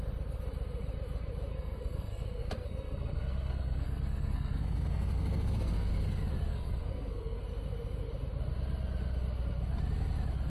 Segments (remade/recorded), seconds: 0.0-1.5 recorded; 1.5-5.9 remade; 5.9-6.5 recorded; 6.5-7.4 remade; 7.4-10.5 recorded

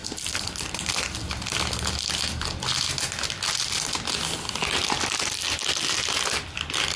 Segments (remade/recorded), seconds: 0.0-7.0 recorded

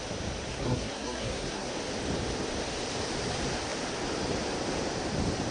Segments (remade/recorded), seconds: 0.0-0.5 recorded; 0.5-1.7 remade; 1.7-5.5 recorded

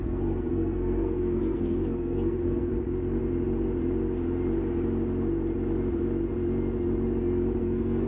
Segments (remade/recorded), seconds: 0.0-2.7 remade; 2.7-7.6 recorded; 7.6-8.1 remade

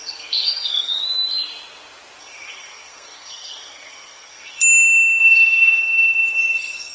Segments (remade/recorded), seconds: 0.0-1.0 remade; 1.0-2.2 recorded; 2.2-4.6 remade; 4.6-5.2 recorded; 5.2-6.9 remade

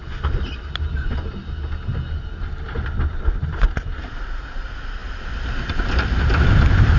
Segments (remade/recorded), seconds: 0.0-7.0 recorded